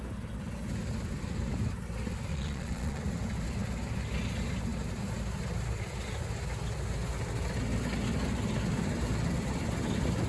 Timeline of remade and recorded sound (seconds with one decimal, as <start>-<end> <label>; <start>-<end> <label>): 0.0-2.3 recorded; 2.3-3.0 remade; 3.0-10.3 recorded